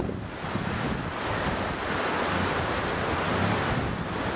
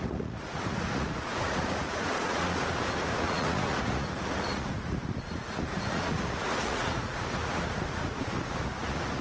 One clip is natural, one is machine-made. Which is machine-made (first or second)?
second